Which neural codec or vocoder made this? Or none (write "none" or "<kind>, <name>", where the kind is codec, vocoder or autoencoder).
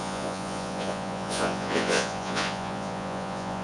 vocoder, Vocos